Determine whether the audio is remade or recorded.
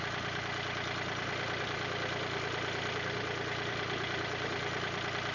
recorded